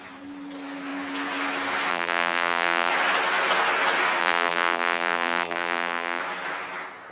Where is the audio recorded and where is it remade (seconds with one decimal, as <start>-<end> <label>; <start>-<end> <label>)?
0.0-1.9 recorded; 1.9-2.9 remade; 2.9-4.2 recorded; 4.2-6.2 remade; 6.2-7.1 recorded